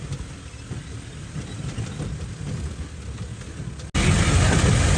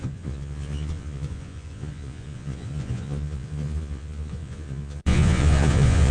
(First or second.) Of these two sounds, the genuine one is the first